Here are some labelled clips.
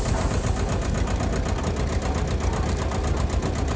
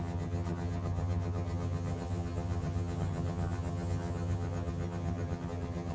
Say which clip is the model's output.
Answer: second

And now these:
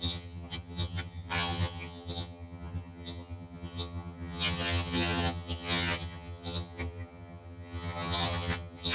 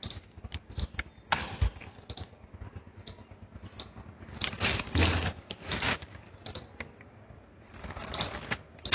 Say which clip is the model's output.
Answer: first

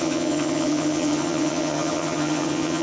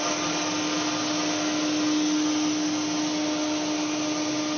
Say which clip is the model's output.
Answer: first